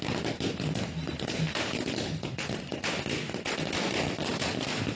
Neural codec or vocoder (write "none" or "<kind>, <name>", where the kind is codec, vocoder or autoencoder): none